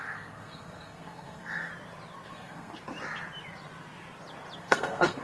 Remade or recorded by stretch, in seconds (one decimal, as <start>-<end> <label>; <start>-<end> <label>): 0.0-1.7 remade; 1.7-2.3 recorded; 2.3-2.7 remade; 2.7-4.6 recorded; 4.6-5.2 remade